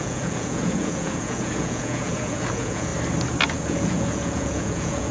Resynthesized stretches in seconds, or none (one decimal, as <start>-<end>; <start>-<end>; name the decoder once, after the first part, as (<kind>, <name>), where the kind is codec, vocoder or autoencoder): 0.0-2.9 (vocoder, Vocos); 3.5-5.1